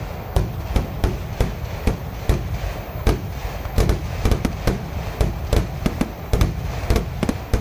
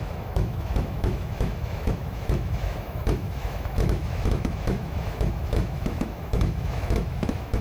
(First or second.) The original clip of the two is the first